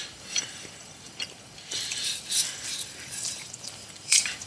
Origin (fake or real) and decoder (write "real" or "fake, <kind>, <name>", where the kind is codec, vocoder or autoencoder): fake, vocoder, BigVGAN v2